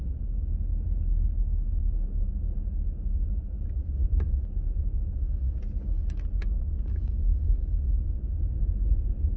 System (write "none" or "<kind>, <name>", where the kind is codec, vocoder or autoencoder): none